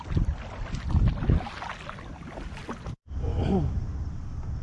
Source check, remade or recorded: recorded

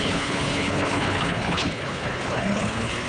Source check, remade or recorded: remade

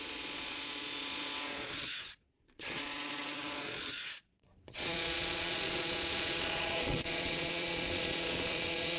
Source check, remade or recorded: remade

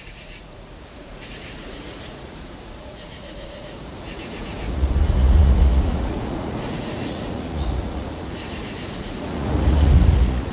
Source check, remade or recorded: remade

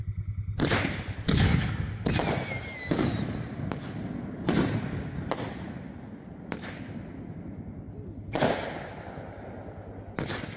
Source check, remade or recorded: recorded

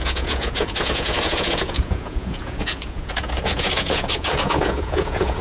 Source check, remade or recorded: remade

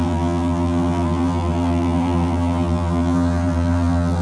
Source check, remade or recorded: remade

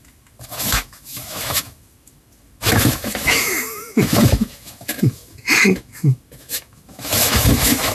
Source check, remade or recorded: remade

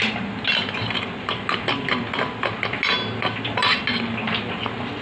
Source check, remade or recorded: recorded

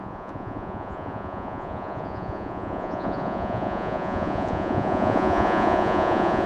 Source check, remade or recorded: remade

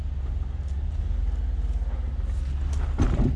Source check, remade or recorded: recorded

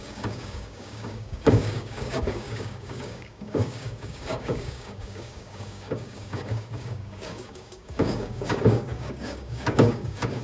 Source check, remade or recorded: remade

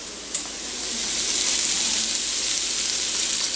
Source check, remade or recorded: recorded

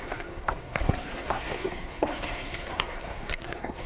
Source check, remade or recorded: remade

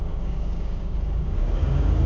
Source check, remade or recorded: remade